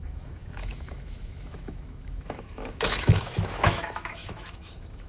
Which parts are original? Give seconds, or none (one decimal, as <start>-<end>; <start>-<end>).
none